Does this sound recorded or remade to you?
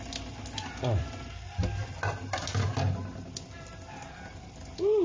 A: recorded